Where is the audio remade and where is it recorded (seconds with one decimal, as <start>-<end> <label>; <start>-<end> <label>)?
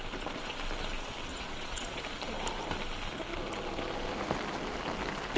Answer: 0.0-1.3 recorded; 1.3-2.0 remade; 2.0-5.4 recorded